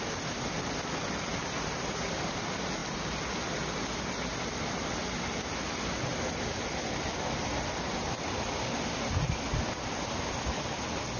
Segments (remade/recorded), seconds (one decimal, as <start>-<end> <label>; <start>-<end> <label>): 0.0-11.2 recorded

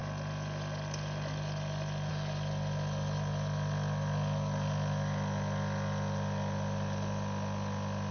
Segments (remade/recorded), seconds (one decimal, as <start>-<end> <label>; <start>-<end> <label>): 0.0-8.1 recorded

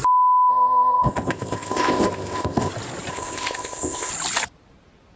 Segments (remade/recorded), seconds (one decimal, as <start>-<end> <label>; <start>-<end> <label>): 0.0-0.5 recorded; 0.5-2.7 remade; 2.7-3.1 recorded; 3.1-4.1 remade; 4.1-5.2 recorded

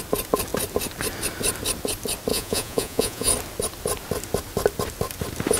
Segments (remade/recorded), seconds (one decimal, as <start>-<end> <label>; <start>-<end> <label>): 0.0-2.3 recorded; 2.3-3.3 remade; 3.3-5.6 recorded